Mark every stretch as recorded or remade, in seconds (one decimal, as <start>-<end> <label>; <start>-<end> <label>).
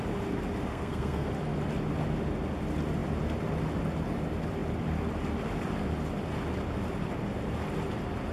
0.0-0.7 recorded; 0.7-1.3 remade; 1.3-8.3 recorded